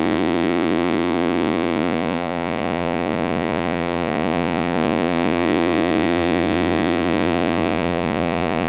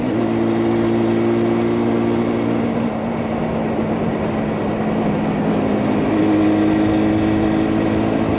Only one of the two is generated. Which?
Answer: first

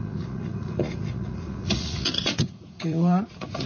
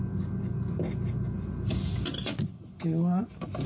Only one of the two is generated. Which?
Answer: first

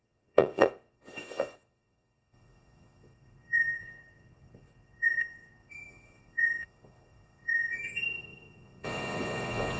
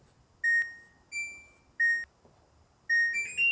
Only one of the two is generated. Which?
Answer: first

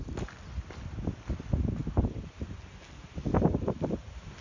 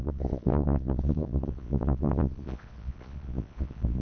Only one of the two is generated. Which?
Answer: second